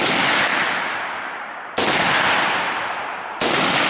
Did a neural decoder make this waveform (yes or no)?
no